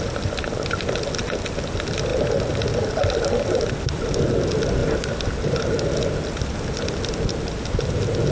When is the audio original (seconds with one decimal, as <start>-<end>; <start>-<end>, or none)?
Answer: 0.0-8.3